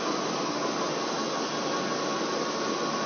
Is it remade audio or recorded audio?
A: recorded